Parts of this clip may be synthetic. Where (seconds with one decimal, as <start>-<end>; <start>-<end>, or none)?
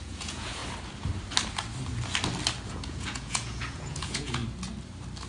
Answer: 0.0-0.6; 2.7-4.4